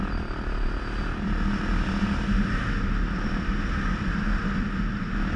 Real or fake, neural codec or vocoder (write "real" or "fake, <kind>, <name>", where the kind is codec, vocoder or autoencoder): real